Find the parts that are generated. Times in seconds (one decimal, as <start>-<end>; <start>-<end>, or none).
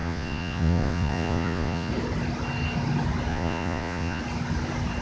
0.0-1.9; 3.3-4.2